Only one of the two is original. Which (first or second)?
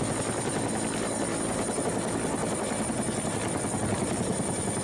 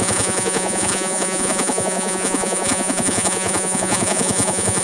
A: first